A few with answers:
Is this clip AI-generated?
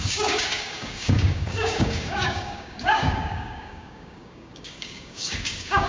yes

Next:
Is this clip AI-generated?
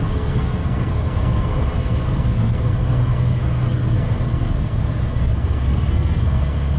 yes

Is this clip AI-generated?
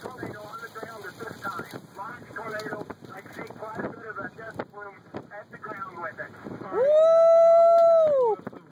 no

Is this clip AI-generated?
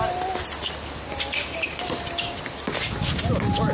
no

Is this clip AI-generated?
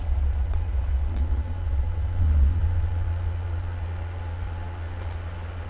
yes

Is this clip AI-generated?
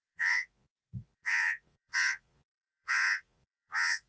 yes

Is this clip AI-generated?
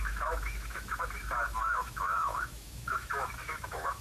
yes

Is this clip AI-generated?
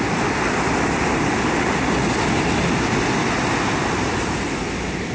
no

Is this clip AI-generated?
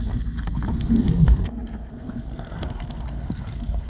yes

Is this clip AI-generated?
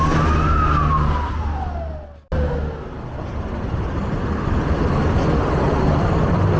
no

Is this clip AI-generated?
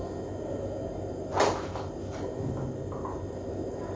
no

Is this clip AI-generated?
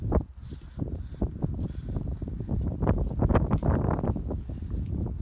no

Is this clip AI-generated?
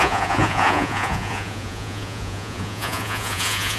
yes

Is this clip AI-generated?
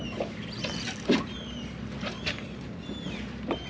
no